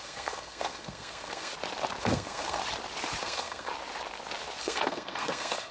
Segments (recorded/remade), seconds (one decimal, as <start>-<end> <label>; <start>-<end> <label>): 0.0-1.5 remade; 1.5-2.0 recorded; 2.0-2.6 remade; 2.6-3.2 recorded; 3.2-3.7 remade; 3.7-4.6 recorded; 4.6-5.7 remade